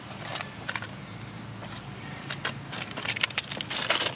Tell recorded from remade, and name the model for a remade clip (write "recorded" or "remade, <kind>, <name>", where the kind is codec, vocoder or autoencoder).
recorded